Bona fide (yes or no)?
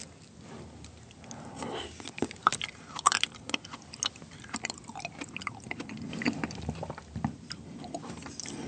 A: yes